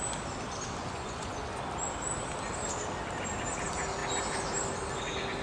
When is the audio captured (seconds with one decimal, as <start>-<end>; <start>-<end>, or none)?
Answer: 0.0-0.8; 1.6-5.4